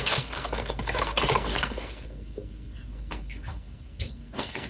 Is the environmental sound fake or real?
fake